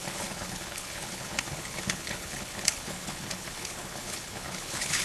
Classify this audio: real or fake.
fake